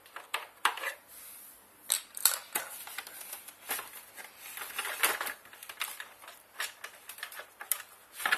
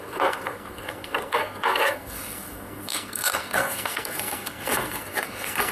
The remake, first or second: second